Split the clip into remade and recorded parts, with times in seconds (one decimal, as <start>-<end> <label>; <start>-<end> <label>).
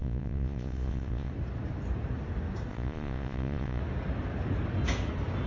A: 0.0-1.3 remade; 1.3-2.7 recorded; 2.7-3.8 remade; 3.8-5.5 recorded